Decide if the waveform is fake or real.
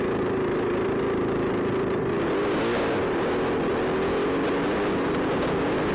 real